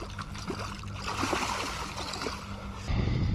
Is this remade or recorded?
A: recorded